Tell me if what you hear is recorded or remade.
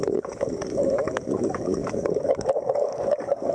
remade